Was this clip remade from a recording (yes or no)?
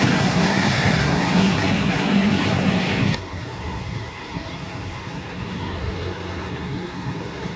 yes